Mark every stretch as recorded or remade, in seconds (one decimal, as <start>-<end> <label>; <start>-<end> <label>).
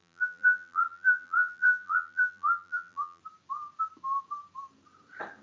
0.0-3.2 remade; 3.2-5.4 recorded